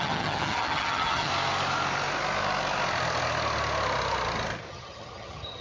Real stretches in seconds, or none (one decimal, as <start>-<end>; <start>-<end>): 1.3-4.7